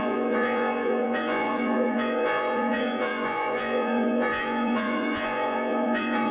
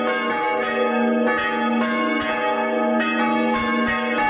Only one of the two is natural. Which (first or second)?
second